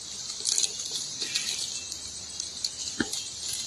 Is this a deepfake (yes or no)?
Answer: no